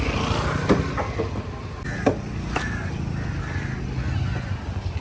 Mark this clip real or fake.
real